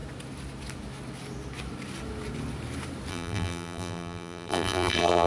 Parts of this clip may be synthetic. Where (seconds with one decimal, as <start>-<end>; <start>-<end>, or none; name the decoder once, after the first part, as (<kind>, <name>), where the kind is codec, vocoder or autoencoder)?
3.1-5.3 (vocoder, BigVGAN v2)